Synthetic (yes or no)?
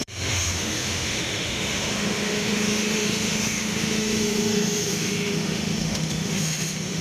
yes